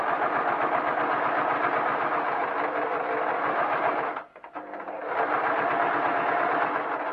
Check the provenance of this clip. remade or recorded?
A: recorded